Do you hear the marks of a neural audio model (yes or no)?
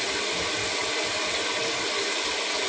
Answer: no